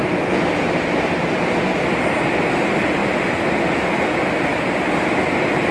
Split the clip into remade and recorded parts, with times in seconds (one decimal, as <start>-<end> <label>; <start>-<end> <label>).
0.0-0.5 recorded; 0.5-3.0 remade; 3.0-4.1 recorded; 4.1-5.7 remade